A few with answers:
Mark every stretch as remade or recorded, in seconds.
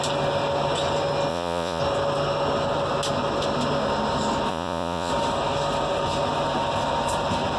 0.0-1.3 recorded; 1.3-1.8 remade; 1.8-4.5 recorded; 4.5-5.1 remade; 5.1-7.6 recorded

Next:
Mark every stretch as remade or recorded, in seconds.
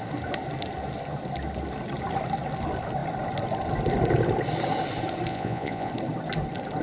0.0-5.3 recorded; 5.3-5.9 remade; 5.9-6.8 recorded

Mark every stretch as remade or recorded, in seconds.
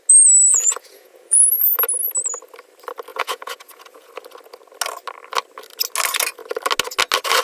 0.0-0.5 recorded; 0.5-1.6 remade; 1.6-3.1 recorded; 3.1-4.1 remade; 4.1-7.4 recorded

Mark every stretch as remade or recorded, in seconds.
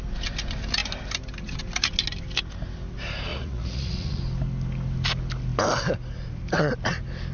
0.0-3.3 recorded; 3.3-4.2 remade; 4.2-7.3 recorded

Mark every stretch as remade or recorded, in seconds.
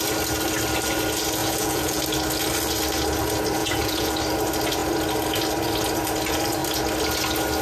0.0-1.4 recorded; 1.4-2.0 remade; 2.0-3.6 recorded; 3.6-4.1 remade; 4.1-7.6 recorded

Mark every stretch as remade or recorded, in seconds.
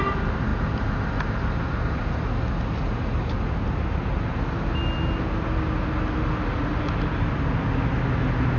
0.0-8.6 recorded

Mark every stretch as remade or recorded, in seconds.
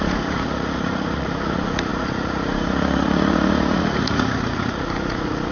0.0-5.5 remade